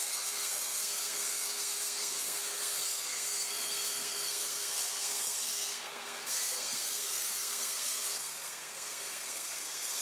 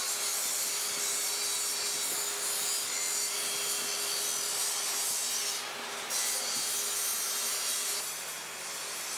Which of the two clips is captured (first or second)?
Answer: second